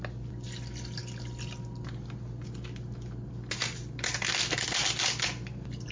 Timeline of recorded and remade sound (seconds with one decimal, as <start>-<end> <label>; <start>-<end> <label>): 0.0-5.9 recorded